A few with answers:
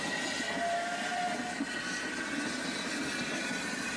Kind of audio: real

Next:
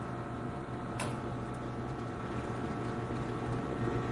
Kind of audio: fake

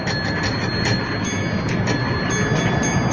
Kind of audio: real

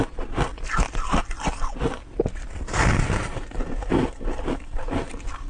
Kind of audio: real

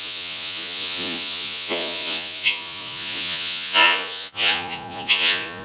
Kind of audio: fake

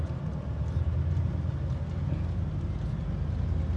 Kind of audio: real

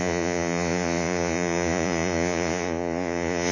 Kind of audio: fake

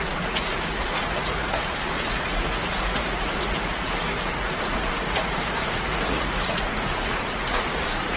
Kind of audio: fake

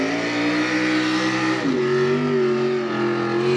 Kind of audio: real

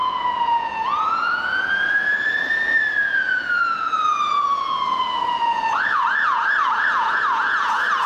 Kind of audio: fake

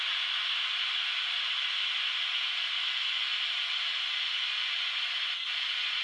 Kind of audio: real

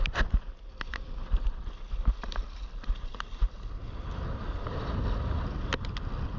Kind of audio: real